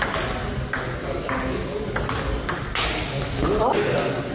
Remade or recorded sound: recorded